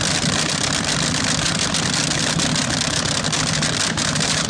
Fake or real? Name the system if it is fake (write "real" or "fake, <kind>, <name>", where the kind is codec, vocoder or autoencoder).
real